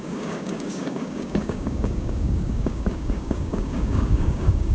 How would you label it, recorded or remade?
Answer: remade